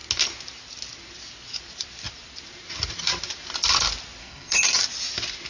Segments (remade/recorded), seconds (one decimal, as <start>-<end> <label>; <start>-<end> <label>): 0.0-4.2 recorded; 4.2-4.8 remade; 4.8-5.5 recorded